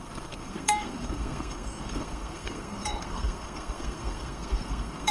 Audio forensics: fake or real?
fake